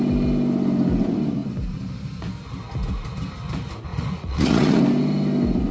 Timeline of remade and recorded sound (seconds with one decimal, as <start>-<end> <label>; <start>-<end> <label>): 0.0-3.9 recorded; 3.9-4.8 remade; 4.8-5.7 recorded

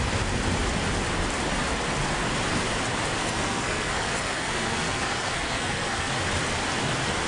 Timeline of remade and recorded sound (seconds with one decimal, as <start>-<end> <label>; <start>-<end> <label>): 0.0-3.2 recorded; 3.2-6.1 remade; 6.1-7.3 recorded

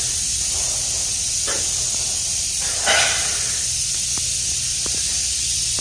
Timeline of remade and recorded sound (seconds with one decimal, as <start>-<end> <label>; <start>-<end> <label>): 0.0-5.8 recorded

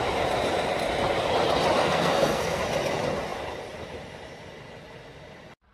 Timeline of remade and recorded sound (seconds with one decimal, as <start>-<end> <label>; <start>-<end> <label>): 0.0-1.8 recorded; 1.8-2.6 remade; 2.6-5.7 recorded